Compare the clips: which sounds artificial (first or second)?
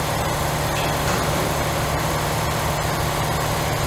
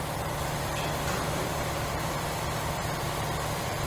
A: second